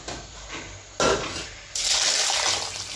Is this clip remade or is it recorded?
recorded